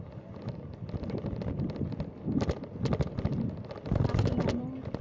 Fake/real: real